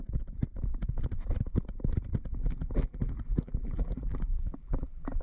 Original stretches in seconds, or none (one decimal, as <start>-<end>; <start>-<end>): 0.0-2.4